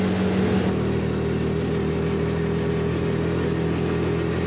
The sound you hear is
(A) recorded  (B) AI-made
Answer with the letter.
A